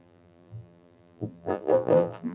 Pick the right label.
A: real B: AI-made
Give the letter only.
B